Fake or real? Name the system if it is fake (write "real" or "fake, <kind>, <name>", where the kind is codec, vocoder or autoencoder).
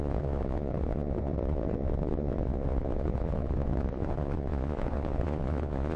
fake, vocoder, Vocos